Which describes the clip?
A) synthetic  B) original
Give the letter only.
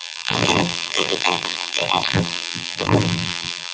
A